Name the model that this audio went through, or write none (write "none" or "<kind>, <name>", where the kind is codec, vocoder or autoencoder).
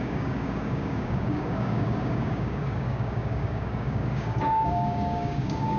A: codec, DAC